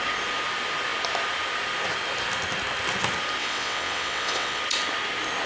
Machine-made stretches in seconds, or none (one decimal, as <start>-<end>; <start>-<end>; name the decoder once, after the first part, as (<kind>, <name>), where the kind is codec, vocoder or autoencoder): 3.4-4.6 (vocoder, WaveNeXt)